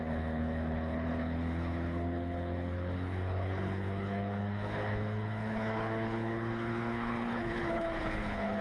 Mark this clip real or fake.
fake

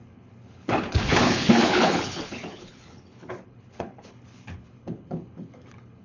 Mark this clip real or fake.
fake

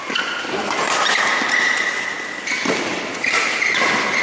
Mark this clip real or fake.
real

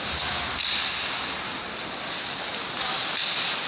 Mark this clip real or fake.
real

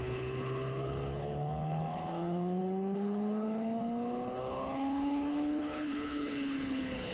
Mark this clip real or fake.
fake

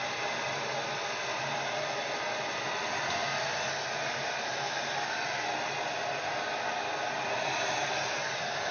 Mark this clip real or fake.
real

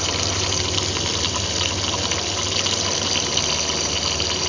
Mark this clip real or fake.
real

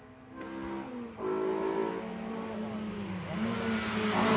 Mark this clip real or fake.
real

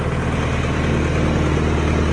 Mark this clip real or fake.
real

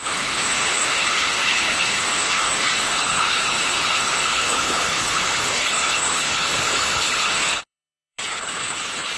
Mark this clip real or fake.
fake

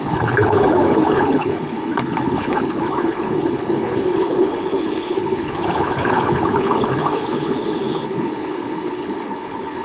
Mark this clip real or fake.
fake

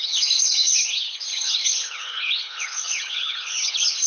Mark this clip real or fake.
fake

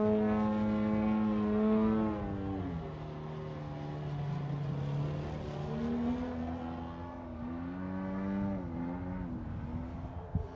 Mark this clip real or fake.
real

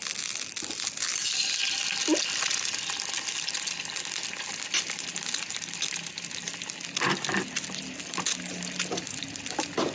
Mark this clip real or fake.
real